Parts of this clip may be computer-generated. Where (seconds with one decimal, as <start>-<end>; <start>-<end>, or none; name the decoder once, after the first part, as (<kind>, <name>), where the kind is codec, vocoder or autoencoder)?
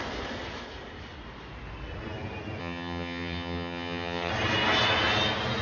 2.6-4.3 (vocoder, HiFi-GAN)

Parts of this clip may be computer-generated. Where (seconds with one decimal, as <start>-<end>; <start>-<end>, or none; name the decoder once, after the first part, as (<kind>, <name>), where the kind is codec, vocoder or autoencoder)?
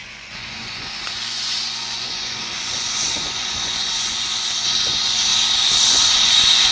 0.0-5.3 (vocoder, Vocos); 5.9-6.7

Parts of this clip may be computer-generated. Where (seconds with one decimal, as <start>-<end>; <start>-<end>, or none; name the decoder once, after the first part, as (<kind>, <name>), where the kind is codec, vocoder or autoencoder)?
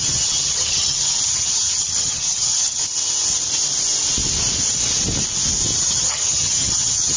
0.0-2.8 (vocoder, HiFi-GAN); 5.8-7.2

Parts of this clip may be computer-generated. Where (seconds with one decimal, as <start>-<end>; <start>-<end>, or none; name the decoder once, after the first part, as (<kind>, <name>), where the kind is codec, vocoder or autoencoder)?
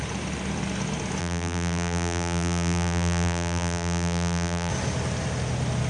1.2-4.7 (vocoder, BigVGAN v2)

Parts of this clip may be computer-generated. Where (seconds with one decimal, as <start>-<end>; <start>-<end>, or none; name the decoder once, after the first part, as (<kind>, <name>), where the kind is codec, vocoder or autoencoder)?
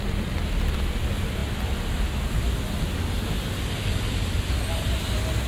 none